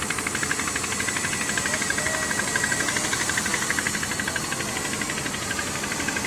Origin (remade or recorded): recorded